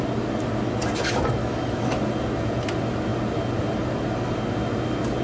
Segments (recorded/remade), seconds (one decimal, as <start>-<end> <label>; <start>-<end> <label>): 0.0-1.4 recorded; 1.4-2.1 remade; 2.1-5.2 recorded